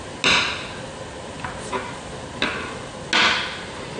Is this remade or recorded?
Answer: recorded